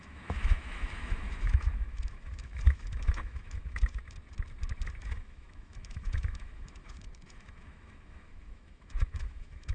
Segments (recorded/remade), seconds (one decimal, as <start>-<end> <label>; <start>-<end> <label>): 0.0-4.0 remade; 4.0-5.0 recorded; 5.0-9.7 remade